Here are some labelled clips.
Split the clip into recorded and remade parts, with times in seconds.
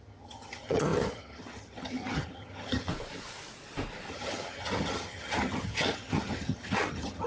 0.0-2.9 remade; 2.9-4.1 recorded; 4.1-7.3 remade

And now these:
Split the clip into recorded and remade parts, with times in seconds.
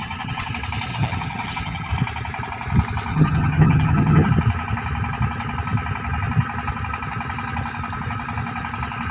0.0-0.5 remade; 0.5-0.9 recorded; 0.9-1.9 remade; 1.9-3.1 recorded; 3.1-4.3 remade; 4.3-9.1 recorded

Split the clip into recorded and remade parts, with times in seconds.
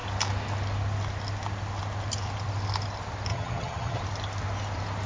0.0-3.3 recorded; 3.3-4.0 remade; 4.0-5.1 recorded